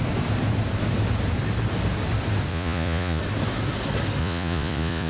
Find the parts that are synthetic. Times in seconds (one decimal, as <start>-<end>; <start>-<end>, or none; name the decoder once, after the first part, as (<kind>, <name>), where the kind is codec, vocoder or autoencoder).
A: 2.5-3.2 (vocoder, Vocos); 4.2-5.1